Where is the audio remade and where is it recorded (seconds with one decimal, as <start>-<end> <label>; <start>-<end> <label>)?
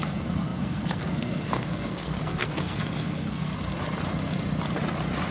0.0-3.5 remade; 3.5-5.3 recorded